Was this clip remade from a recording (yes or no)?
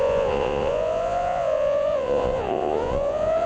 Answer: yes